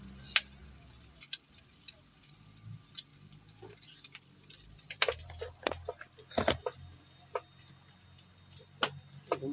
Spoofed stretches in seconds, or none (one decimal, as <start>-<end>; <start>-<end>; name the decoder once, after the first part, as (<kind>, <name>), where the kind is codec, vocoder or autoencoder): 0.6-2.3 (vocoder, BigVGAN v2); 3.1-5.7